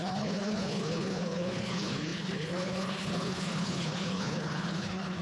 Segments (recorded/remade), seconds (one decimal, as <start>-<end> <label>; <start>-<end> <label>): 0.0-5.2 remade

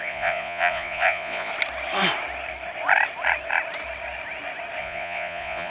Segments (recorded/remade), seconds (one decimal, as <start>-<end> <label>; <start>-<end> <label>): 0.0-1.5 remade; 1.5-4.8 recorded; 4.8-5.7 remade

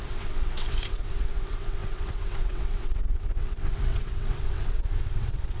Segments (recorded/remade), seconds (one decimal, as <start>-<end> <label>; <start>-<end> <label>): 0.0-5.6 remade

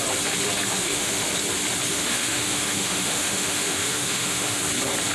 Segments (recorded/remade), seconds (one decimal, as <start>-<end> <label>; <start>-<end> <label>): 0.0-0.7 recorded; 0.7-1.3 remade; 1.3-1.9 recorded; 1.9-4.6 remade; 4.6-5.1 recorded

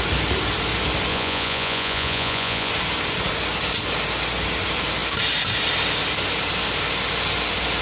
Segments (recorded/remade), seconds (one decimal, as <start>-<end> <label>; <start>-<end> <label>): 0.0-1.1 recorded; 1.1-2.7 remade; 2.7-7.8 recorded